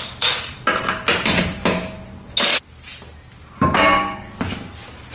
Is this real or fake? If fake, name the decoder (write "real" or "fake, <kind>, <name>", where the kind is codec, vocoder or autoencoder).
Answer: real